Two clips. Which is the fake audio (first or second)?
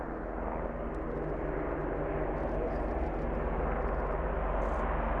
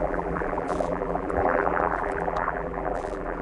second